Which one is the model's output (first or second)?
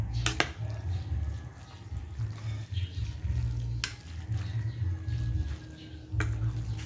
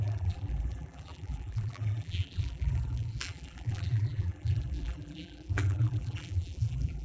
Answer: second